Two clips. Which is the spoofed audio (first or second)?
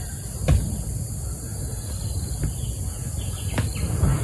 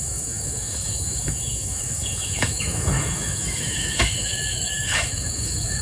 second